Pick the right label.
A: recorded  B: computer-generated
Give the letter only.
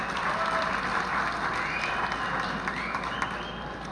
A